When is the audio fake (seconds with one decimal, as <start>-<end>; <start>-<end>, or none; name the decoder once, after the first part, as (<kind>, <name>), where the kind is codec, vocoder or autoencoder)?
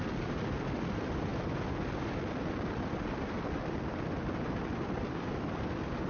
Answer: none